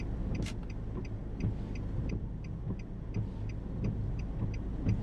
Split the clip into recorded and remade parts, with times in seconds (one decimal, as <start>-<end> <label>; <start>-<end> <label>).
0.0-5.0 recorded